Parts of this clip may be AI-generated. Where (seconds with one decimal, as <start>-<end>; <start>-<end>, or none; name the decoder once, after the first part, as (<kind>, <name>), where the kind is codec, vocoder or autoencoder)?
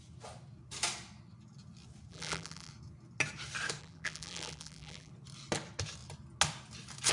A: 2.1-2.7 (vocoder, BigVGAN v2); 3.8-5.1